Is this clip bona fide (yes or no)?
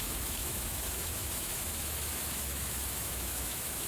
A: no